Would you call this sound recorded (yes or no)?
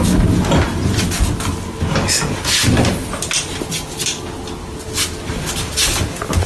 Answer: yes